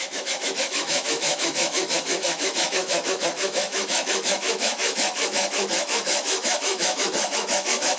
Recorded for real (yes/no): no